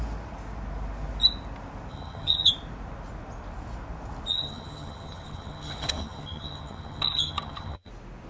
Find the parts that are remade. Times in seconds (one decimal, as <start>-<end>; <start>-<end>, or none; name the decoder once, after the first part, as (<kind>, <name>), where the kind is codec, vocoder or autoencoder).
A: 1.9-2.5 (vocoder, HiFi-GAN); 4.3-7.9